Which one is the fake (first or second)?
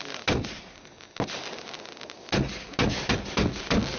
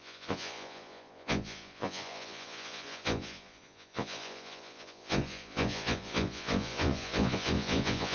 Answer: second